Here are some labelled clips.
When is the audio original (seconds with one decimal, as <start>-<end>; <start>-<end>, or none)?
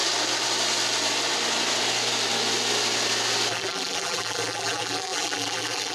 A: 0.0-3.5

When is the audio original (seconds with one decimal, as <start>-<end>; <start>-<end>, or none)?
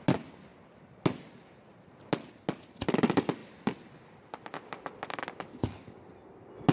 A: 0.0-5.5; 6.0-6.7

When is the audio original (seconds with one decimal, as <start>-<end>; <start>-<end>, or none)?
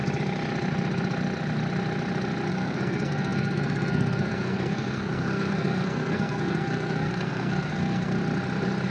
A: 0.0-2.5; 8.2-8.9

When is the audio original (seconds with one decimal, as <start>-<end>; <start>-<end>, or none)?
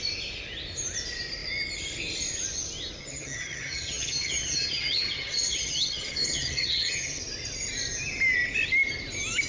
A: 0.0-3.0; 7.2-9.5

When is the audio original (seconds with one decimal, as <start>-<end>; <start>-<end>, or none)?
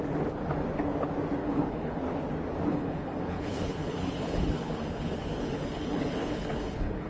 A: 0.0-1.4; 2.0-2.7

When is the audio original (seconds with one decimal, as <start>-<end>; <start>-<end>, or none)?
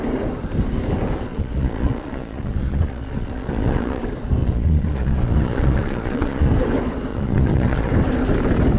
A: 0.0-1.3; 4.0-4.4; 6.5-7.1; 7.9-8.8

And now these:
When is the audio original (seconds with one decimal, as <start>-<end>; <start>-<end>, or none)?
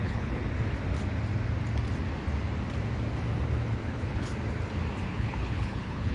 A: 0.4-3.8; 4.3-5.1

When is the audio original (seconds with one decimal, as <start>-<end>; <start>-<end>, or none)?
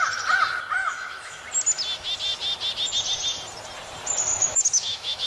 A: 0.0-0.8; 1.4-4.3